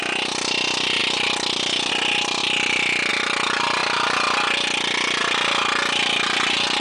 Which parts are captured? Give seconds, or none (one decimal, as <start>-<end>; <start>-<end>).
0.0-6.8

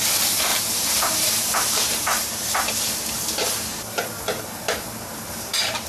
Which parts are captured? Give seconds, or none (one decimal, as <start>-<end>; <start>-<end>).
0.0-0.5; 2.5-3.7

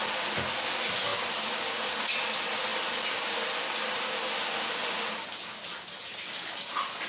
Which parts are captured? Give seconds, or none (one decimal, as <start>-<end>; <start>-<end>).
0.0-7.1

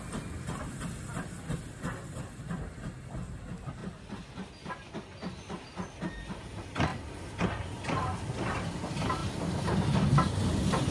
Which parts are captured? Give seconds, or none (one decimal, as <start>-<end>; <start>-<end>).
0.0-6.9; 7.4-10.9

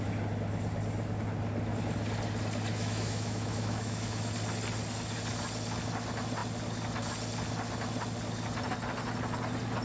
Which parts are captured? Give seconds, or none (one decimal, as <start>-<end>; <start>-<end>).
0.0-2.7; 4.3-9.8

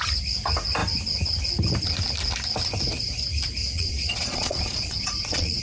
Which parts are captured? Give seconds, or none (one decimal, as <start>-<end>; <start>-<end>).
0.0-3.6

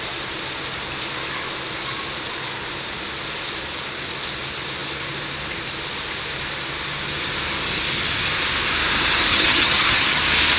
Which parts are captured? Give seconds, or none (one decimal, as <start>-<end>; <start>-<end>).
0.0-9.3; 10.2-10.6